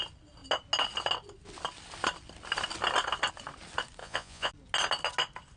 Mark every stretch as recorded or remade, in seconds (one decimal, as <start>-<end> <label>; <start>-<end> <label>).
0.0-4.0 recorded; 4.0-4.5 remade; 4.5-5.6 recorded